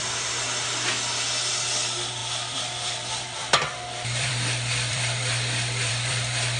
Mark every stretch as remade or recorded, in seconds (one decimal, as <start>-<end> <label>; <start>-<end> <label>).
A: 0.0-2.2 recorded; 2.2-6.6 remade